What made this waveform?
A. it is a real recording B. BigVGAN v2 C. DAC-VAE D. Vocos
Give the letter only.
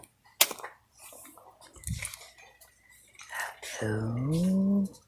A